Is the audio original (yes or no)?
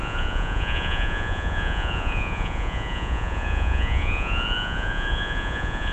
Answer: no